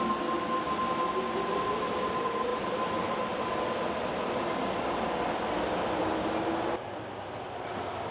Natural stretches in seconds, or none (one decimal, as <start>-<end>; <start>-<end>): 0.0-8.1